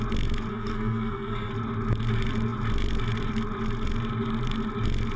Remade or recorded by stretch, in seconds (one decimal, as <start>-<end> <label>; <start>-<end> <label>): 0.0-0.5 recorded; 0.5-1.5 remade; 1.5-5.2 recorded